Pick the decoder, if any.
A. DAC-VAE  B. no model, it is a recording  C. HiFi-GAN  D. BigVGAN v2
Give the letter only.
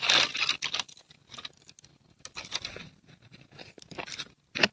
B